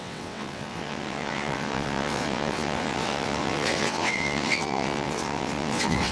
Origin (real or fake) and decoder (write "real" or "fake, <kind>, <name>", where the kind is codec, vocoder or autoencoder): fake, vocoder, WaveNeXt